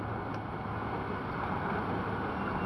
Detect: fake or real real